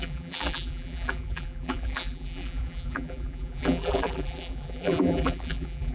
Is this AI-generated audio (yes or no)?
yes